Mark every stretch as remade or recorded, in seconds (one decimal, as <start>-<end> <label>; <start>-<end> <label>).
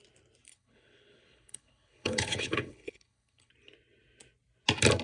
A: 0.0-0.5 recorded; 0.5-3.5 remade; 3.5-5.0 recorded